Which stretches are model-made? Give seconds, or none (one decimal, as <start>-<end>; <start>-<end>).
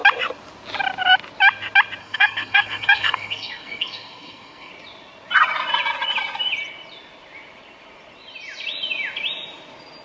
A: 2.0-4.7